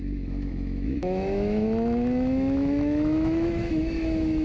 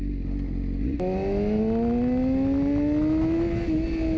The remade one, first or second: first